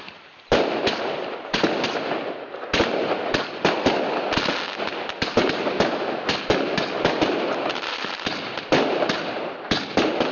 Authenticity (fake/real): real